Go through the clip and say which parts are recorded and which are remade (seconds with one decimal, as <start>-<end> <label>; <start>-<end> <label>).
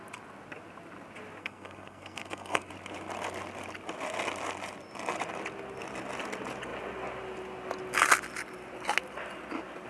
0.0-1.4 recorded; 1.4-2.7 remade; 2.7-9.9 recorded